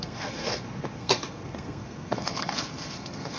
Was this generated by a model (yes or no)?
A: yes